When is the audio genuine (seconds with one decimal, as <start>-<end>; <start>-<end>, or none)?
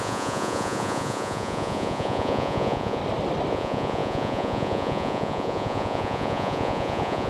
3.0-3.5